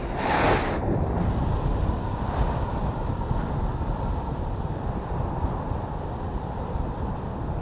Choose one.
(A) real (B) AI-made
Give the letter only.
A